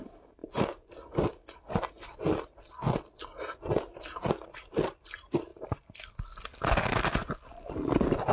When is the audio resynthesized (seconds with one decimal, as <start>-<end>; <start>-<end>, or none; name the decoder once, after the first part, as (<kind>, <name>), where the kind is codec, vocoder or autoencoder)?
none